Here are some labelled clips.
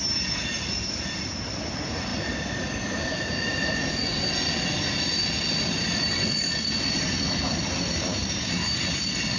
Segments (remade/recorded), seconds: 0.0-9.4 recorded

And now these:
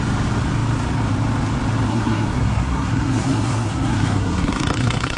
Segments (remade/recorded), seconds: 0.0-1.9 recorded; 1.9-5.2 remade

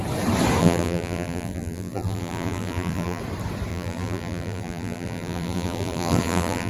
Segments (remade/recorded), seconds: 0.0-0.6 recorded; 0.6-3.2 remade; 3.2-3.7 recorded; 3.7-6.7 remade

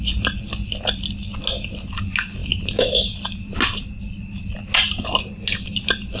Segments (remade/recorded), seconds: 0.0-6.2 recorded

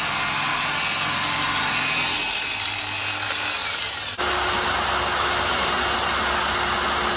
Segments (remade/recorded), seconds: 0.0-7.2 recorded

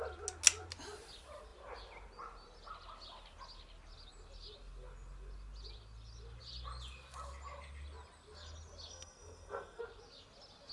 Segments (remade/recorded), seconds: 0.0-8.9 recorded; 8.9-9.8 remade; 9.8-10.7 recorded

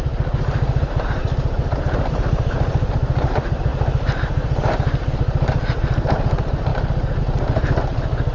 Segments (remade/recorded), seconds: 0.0-6.7 remade; 6.7-7.2 recorded; 7.2-8.3 remade

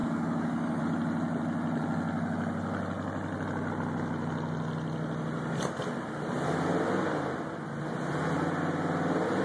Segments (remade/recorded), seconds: 0.0-0.8 remade; 0.8-9.4 recorded